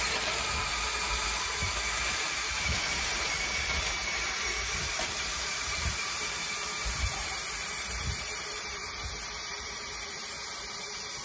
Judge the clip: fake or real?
fake